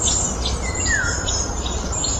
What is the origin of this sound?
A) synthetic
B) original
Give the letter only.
B